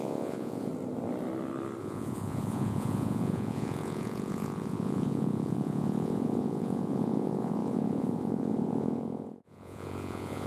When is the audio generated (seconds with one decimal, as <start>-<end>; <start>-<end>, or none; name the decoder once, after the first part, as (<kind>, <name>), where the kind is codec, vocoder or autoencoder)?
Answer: 0.0-0.7 (vocoder, Vocos); 1.8-10.5